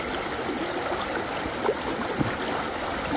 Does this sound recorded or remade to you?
recorded